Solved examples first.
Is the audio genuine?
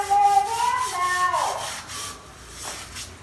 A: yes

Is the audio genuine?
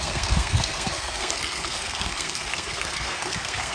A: no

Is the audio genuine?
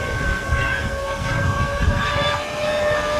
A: no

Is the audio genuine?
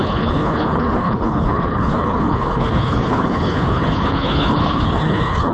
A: no